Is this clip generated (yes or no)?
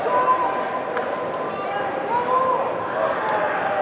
no